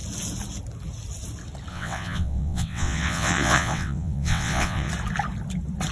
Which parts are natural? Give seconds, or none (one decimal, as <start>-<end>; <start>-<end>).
0.0-1.7; 4.9-5.9